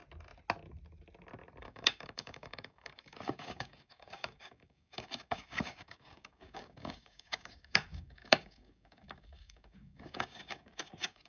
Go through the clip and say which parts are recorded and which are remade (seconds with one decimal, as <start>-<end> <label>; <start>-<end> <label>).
0.0-1.6 recorded; 1.6-11.3 remade